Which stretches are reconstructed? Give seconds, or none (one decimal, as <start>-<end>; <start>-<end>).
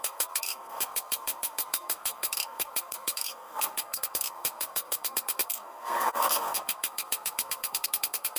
0.0-8.4